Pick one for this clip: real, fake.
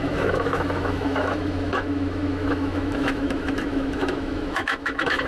fake